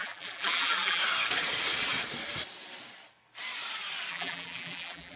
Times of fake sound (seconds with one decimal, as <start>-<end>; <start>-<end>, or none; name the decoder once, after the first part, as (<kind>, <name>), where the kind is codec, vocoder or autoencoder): 0.0-1.0 (vocoder, BigVGAN v2); 4.1-5.2